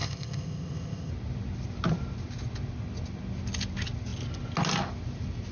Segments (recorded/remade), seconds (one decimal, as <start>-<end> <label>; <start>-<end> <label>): 0.0-1.1 remade; 1.1-5.5 recorded